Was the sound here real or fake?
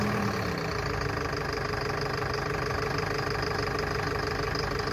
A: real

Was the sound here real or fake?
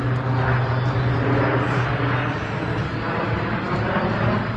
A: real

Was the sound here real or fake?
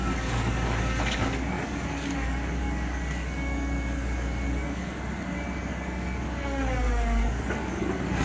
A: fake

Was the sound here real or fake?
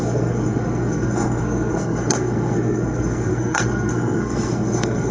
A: fake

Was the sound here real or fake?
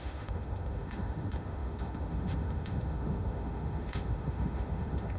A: fake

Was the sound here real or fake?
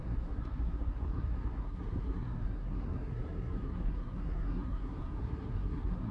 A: fake